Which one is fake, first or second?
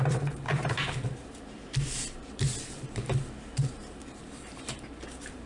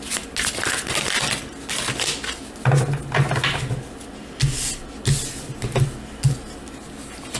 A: first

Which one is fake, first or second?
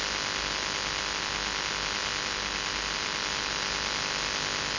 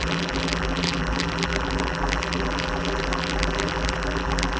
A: second